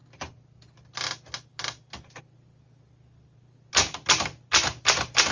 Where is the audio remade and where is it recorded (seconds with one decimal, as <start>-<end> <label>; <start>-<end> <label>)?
0.0-5.3 recorded